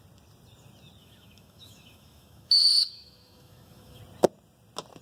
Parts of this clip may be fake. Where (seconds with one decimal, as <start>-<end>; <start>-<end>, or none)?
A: 1.0-4.0